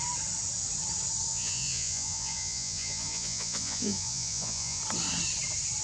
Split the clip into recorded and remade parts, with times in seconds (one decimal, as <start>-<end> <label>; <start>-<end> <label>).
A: 0.0-1.3 recorded; 1.3-4.8 remade; 4.8-5.8 recorded